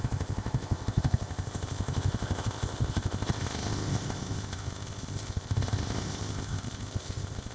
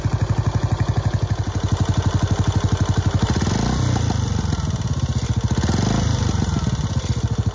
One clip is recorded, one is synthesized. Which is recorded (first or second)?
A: second